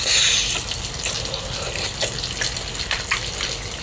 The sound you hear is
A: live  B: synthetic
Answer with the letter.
A